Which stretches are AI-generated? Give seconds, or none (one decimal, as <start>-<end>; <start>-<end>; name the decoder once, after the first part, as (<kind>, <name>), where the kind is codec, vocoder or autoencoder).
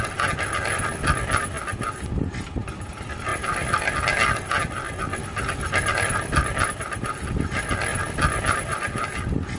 none